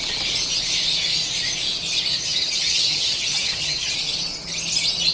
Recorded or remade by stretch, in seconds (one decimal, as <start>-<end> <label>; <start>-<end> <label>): 0.0-2.1 recorded; 2.1-3.9 remade; 3.9-5.1 recorded